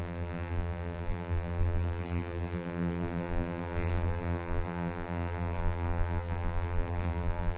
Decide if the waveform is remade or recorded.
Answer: remade